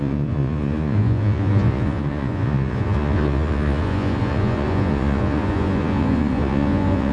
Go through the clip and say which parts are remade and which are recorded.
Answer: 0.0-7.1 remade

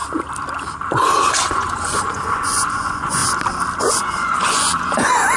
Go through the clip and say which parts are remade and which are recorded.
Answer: 0.0-1.2 recorded; 1.2-3.2 remade; 3.2-3.8 recorded; 3.8-5.4 remade

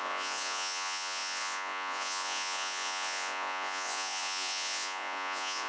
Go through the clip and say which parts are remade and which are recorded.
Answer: 0.0-5.7 remade

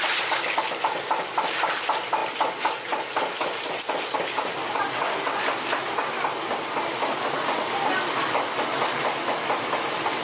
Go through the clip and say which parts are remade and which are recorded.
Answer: 0.0-10.2 recorded

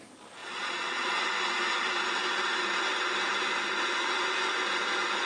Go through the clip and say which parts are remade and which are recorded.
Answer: 0.0-0.4 recorded; 0.4-1.2 remade; 1.2-5.3 recorded

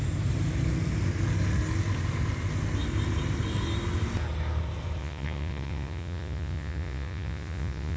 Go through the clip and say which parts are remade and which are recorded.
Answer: 0.0-5.0 recorded; 5.0-8.0 remade

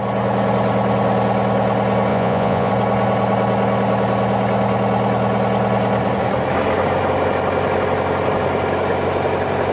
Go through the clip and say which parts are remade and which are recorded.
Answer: 0.0-2.1 recorded; 2.1-2.7 remade; 2.7-9.7 recorded

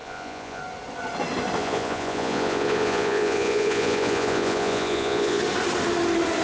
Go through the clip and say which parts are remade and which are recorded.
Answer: 0.0-0.6 remade; 0.6-1.6 recorded; 1.6-5.4 remade; 5.4-6.4 recorded